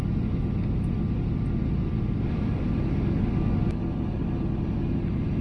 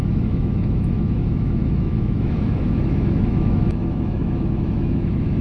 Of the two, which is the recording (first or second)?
first